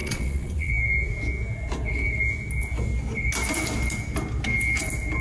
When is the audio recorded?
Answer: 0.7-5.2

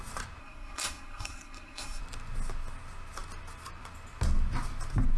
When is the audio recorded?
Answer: 0.0-0.4; 2.0-5.2

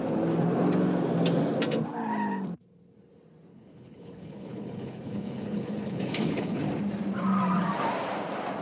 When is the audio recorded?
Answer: 0.0-3.5; 6.6-8.6